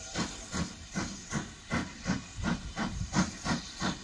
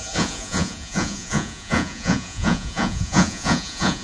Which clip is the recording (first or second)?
first